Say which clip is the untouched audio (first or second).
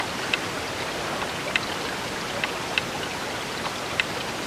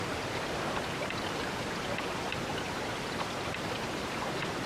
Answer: first